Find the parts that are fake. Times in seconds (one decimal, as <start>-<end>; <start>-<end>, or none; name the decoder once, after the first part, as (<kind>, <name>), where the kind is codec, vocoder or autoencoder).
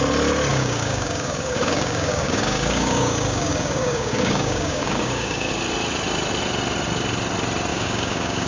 0.5-5.5 (codec, DAC); 7.7-8.5